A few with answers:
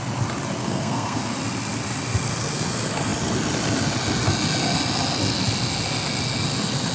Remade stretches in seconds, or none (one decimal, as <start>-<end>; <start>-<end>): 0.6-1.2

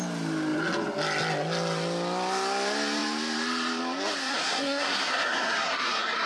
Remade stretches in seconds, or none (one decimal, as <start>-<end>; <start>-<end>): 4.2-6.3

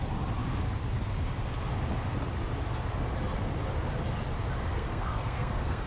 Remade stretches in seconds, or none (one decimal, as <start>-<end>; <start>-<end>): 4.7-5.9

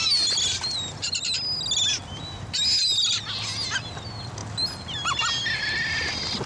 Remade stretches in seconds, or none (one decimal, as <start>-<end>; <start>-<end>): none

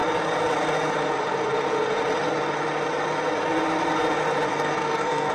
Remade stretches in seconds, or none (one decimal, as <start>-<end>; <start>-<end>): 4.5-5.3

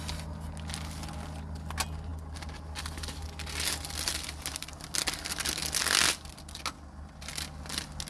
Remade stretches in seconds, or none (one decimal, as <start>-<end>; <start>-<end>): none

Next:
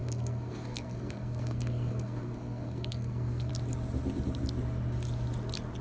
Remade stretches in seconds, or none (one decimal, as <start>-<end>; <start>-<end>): 0.0-3.5

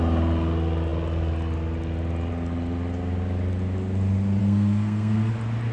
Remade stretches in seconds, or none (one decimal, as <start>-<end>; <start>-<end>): 4.4-5.3